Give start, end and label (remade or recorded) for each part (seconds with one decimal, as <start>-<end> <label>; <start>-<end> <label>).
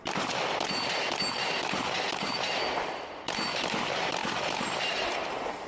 0.0-4.2 recorded; 4.2-5.7 remade